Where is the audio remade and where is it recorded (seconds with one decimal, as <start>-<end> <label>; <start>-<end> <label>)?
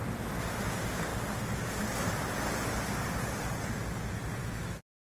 0.0-4.4 recorded; 4.4-5.1 remade